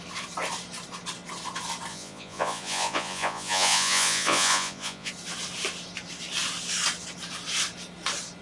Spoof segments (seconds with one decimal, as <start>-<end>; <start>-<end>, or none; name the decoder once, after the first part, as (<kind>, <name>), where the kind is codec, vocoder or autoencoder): 1.9-5.1 (vocoder, Vocos)